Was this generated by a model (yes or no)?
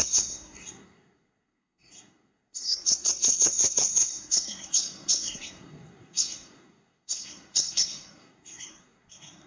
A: yes